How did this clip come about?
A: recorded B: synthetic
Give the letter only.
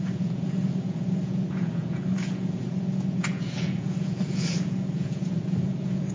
B